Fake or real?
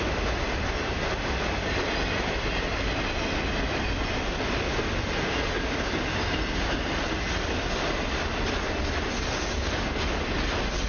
real